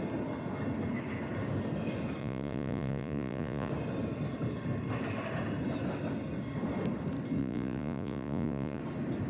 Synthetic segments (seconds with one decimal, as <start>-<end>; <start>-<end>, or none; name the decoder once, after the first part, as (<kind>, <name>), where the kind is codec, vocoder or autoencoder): 2.2-3.7 (vocoder, Vocos); 7.4-8.8